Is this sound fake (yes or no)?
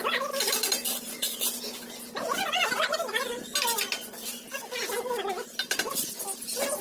no